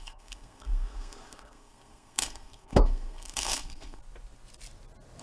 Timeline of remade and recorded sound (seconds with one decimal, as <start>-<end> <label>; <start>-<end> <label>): 0.0-4.0 remade; 4.0-5.2 recorded